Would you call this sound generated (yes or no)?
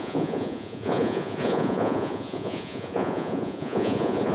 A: yes